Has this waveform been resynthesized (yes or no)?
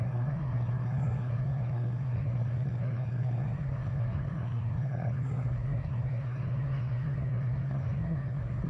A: yes